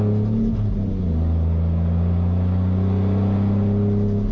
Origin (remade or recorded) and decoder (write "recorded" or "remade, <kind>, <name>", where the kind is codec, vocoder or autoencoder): recorded